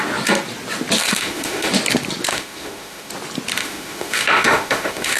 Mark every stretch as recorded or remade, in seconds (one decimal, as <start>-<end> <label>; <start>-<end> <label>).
0.0-1.0 recorded; 1.0-1.7 remade; 1.7-2.3 recorded; 2.3-3.1 remade; 3.1-3.6 recorded; 3.6-5.2 remade